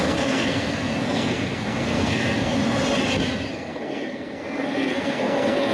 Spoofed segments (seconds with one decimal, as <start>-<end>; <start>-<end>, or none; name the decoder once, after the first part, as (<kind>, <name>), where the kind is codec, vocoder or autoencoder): 0.0-2.6 (codec, SNAC); 3.5-5.7